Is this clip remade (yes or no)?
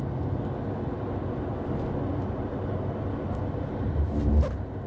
no